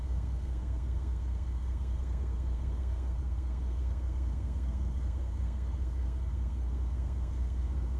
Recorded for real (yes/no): no